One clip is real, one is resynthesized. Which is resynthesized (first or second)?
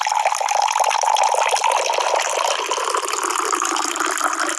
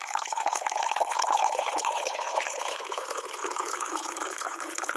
second